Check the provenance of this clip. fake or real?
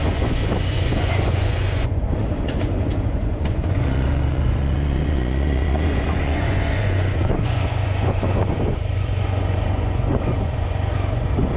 fake